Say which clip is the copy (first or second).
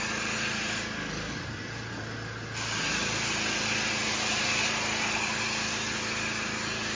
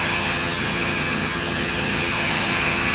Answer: second